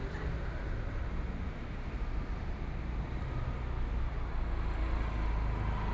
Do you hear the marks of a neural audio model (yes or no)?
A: no